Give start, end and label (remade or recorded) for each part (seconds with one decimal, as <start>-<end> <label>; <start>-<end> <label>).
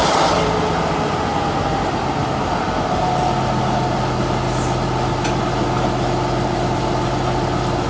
0.0-7.9 recorded